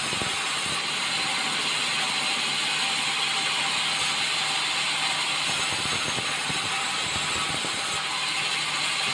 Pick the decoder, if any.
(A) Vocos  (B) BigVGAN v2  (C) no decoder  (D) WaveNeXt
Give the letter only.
C